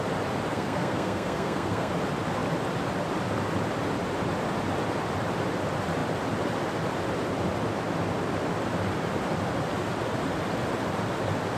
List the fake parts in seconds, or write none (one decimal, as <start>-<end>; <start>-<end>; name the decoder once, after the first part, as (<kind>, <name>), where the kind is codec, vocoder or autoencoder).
0.5-1.9 (codec, SNAC)